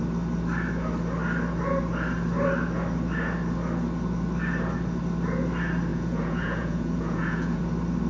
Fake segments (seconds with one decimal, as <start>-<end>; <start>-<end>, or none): 5.9-7.6